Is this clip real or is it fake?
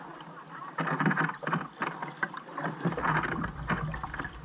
real